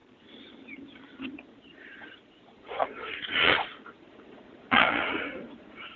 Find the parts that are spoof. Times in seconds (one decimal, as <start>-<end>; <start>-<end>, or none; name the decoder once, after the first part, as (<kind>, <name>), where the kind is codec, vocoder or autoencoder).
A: 1.5-6.0 (vocoder, Vocos)

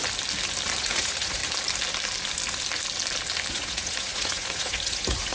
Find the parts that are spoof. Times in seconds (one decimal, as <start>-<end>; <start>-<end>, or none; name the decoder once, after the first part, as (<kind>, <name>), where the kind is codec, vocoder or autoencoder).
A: 0.8-1.4 (vocoder, Vocos); 3.5-5.3

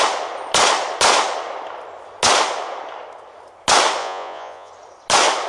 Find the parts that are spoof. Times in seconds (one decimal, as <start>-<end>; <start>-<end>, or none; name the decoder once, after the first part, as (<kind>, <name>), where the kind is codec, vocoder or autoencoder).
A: 4.0-4.7 (vocoder, Vocos)

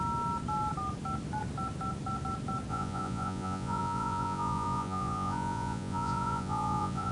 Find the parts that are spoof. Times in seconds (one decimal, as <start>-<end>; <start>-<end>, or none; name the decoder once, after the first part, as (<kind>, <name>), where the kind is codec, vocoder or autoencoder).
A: 2.7-7.1 (vocoder, Vocos)

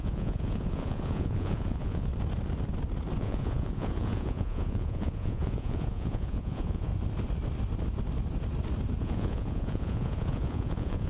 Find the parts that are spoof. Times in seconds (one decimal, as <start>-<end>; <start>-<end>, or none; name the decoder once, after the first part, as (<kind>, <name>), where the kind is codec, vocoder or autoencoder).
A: 0.0-2.1 (vocoder, Vocos); 3.2-6.9; 9.0-11.1

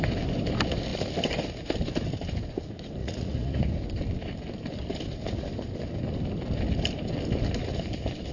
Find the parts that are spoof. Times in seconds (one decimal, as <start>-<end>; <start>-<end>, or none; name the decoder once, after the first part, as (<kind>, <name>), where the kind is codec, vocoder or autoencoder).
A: 3.0-3.6 (vocoder, Vocos)

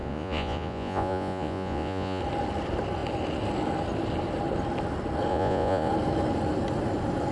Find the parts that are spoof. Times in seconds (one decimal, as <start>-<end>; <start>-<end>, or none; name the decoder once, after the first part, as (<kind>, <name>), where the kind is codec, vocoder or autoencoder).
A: 0.0-2.2 (vocoder, Vocos); 5.3-5.9